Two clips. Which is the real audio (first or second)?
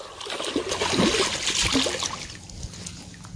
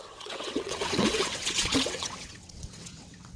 first